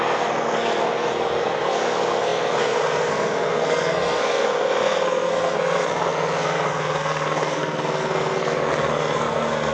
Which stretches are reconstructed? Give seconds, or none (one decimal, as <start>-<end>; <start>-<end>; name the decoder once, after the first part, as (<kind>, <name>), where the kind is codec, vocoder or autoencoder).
0.0-9.7 (codec, SNAC)